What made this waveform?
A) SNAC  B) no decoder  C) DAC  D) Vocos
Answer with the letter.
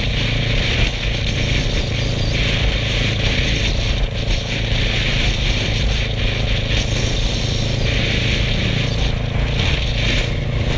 B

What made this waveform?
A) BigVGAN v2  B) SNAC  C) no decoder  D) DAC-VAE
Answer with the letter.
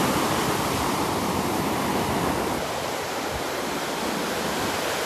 A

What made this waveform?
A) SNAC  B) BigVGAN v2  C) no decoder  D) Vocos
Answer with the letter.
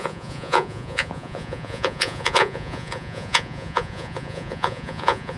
D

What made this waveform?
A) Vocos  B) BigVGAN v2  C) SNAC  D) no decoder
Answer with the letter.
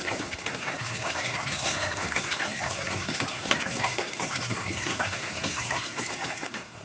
C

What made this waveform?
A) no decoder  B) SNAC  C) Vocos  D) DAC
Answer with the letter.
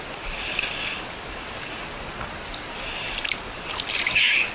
A